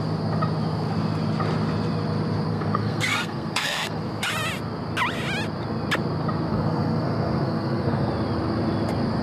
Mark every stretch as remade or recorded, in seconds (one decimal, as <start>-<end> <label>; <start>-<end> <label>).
0.0-2.5 recorded; 2.5-4.0 remade; 4.0-6.5 recorded; 6.5-8.1 remade; 8.1-9.2 recorded